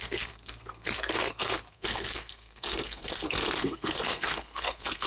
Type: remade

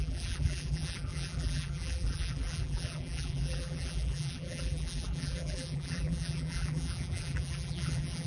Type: remade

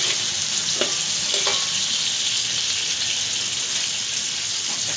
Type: recorded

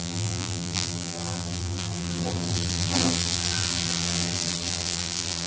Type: remade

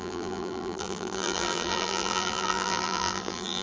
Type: remade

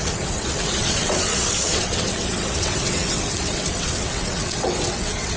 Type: remade